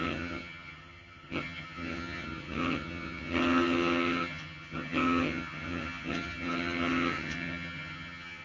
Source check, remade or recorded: remade